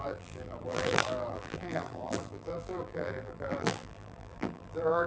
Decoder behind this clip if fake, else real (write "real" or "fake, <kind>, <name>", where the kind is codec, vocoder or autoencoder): fake, vocoder, BigVGAN v2